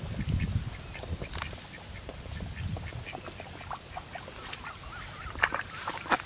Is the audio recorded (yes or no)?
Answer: yes